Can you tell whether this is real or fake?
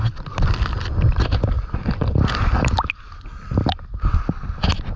real